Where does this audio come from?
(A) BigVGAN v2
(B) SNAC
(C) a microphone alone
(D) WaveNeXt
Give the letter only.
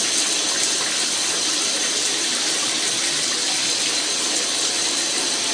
C